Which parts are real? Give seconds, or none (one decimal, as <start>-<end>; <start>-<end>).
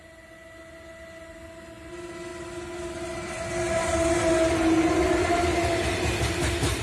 0.0-6.8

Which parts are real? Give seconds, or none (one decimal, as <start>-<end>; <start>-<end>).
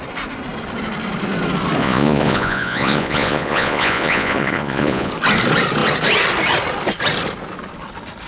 0.0-1.8; 5.1-8.3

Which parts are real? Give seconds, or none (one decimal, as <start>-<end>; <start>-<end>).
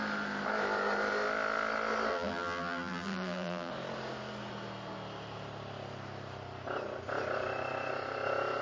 0.0-2.1; 3.7-8.6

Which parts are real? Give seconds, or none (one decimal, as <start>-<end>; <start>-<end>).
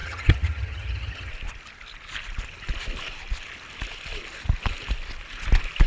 1.3-5.9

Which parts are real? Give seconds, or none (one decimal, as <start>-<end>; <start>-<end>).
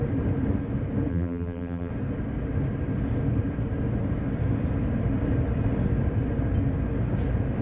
0.0-1.1; 1.9-7.6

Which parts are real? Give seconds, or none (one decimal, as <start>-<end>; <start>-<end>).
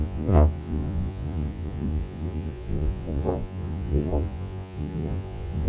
none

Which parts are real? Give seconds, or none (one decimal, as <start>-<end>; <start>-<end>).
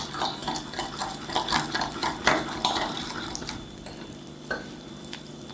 0.0-2.0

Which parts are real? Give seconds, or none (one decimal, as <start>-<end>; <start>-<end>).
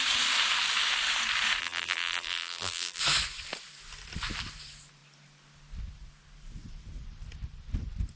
0.0-1.6; 3.0-8.2